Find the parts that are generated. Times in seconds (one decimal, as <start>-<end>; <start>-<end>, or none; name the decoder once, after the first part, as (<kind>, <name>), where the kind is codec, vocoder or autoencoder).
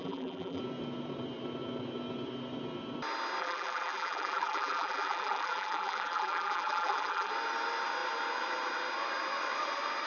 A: 0.0-0.6 (vocoder, BigVGAN v2); 3.4-7.3